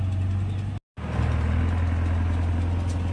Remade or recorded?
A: recorded